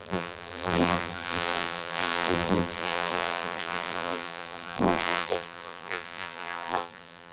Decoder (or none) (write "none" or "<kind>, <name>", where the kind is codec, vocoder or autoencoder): vocoder, BigVGAN v2